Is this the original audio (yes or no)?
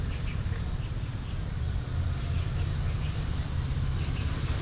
no